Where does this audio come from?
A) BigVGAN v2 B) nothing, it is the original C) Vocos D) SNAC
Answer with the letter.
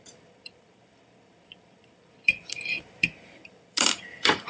A